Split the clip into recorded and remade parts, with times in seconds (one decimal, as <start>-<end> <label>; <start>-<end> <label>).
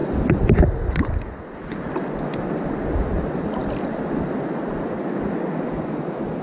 0.0-6.4 recorded